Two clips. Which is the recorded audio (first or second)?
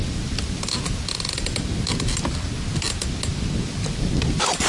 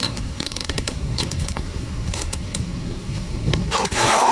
first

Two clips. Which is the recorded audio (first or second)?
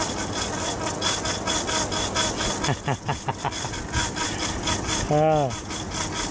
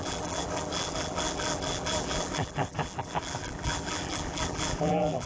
first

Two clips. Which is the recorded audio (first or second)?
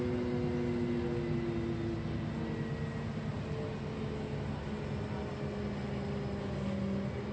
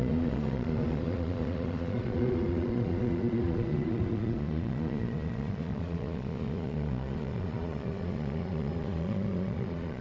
first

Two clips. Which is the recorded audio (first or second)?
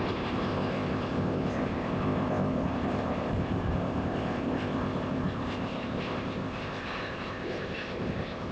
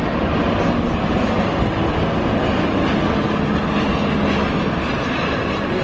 second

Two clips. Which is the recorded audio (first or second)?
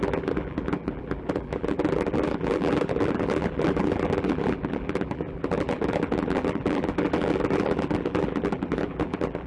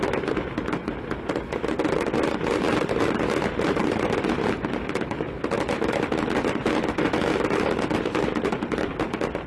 second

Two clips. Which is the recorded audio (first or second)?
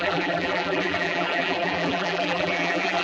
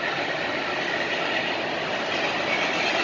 second